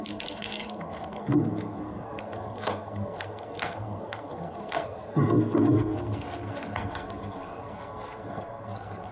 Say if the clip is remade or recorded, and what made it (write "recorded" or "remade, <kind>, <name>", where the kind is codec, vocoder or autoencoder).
remade, codec, SNAC